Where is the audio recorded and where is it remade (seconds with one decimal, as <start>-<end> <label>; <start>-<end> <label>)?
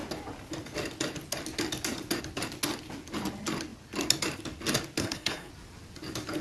0.0-5.0 recorded; 5.0-5.5 remade; 5.5-6.4 recorded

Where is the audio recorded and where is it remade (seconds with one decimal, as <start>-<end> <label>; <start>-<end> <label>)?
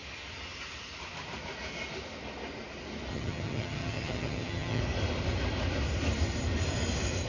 0.0-3.1 recorded; 3.1-4.8 remade; 4.8-7.3 recorded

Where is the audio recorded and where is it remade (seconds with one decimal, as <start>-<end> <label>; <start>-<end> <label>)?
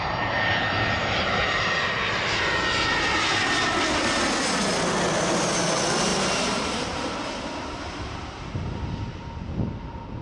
0.0-6.1 recorded; 6.1-8.5 remade; 8.5-10.2 recorded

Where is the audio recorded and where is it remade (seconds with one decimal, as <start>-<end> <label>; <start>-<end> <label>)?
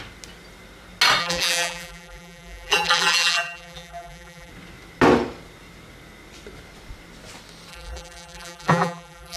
0.0-1.2 recorded; 1.2-4.5 remade; 4.5-7.7 recorded; 7.7-9.4 remade